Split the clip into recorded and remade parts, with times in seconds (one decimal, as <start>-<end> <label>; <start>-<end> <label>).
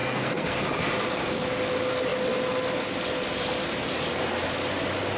0.0-0.6 remade; 0.6-5.2 recorded